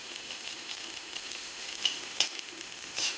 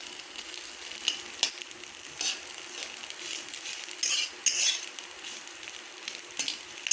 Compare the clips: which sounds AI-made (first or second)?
first